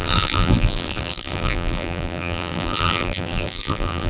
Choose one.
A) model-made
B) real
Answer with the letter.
A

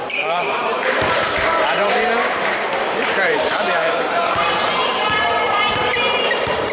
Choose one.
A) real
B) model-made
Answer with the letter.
B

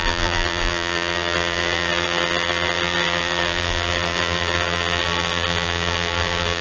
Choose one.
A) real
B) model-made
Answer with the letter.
B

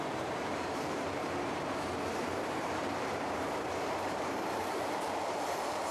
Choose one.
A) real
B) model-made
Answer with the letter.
B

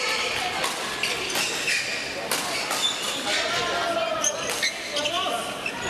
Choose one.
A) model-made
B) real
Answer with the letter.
B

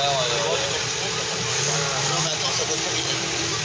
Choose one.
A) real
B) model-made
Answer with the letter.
A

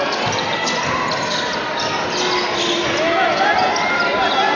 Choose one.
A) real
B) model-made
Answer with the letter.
A